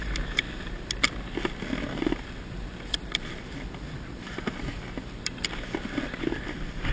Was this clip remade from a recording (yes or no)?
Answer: no